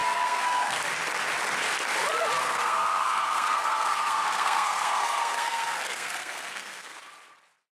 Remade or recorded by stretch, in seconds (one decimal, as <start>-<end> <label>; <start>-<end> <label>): 0.0-0.8 remade; 0.8-2.4 recorded; 2.4-7.0 remade; 7.0-7.7 recorded